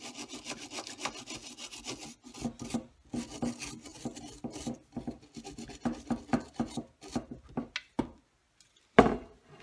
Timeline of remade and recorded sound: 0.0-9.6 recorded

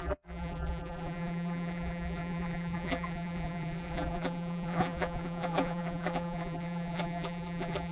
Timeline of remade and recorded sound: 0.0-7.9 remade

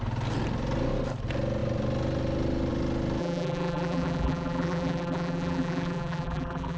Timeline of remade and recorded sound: 0.0-3.2 recorded; 3.2-6.8 remade

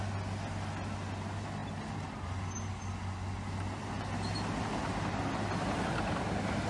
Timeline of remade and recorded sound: 0.0-6.7 recorded

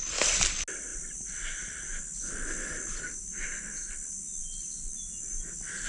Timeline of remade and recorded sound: 0.0-5.9 recorded